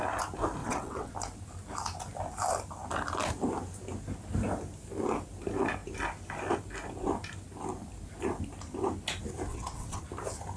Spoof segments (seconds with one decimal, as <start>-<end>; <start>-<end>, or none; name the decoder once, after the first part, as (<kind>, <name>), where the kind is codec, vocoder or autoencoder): 0.6-1.1 (vocoder, WaveNeXt); 9.5-10.0